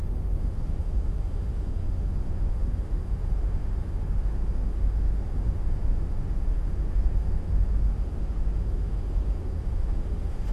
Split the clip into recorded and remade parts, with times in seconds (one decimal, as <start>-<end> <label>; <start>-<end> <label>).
0.0-10.5 remade